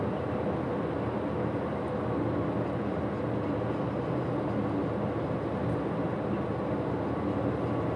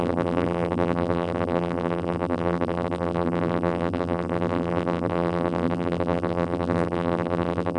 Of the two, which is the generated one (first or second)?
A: second